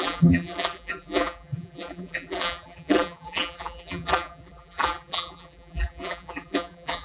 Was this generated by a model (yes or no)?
yes